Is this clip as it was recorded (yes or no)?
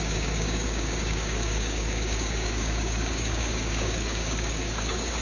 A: no